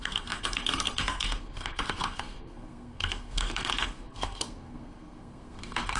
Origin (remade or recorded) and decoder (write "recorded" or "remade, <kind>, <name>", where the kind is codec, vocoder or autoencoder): remade, codec, SNAC